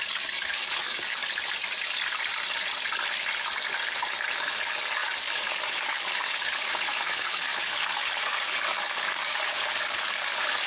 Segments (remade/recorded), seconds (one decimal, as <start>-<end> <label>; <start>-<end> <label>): 0.0-1.2 remade; 1.2-4.4 recorded; 4.4-10.7 remade